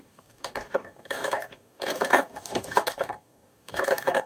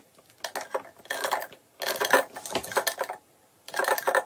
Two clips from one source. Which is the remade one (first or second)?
first